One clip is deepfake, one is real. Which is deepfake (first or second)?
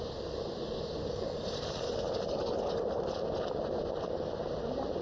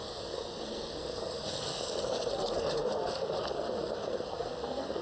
second